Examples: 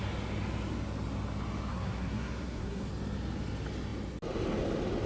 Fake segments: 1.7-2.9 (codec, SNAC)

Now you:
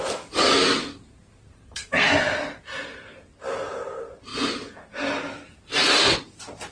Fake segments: 1.5-2.1 (codec, SNAC)